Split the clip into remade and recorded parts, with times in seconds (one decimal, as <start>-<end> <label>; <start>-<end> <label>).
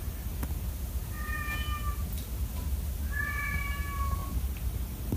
0.0-5.2 recorded